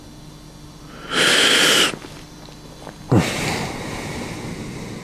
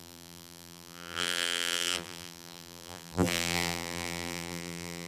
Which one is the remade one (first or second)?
second